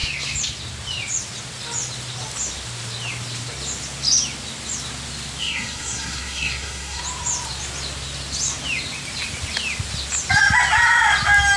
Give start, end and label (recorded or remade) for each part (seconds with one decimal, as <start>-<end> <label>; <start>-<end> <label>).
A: 0.0-5.4 recorded; 5.4-7.0 remade; 7.0-11.6 recorded